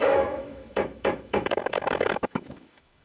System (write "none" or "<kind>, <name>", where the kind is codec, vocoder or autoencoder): autoencoder, DAC-VAE